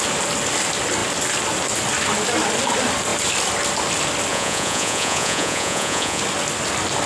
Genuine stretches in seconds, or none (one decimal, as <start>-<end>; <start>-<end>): 0.0-4.3; 6.2-7.1